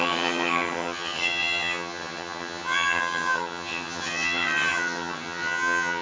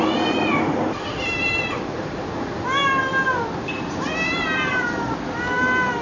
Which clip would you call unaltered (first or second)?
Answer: second